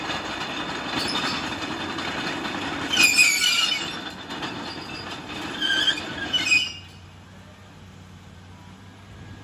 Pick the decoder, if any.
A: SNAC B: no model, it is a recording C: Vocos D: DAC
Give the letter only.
B